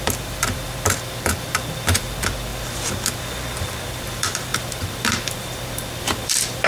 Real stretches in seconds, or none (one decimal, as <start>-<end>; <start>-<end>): 2.5-3.1